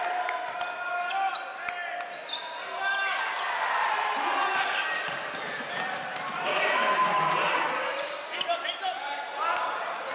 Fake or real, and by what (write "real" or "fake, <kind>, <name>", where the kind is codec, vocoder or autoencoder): real